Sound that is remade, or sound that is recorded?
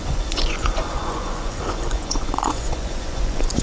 remade